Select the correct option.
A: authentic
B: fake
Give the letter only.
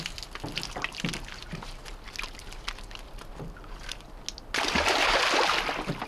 A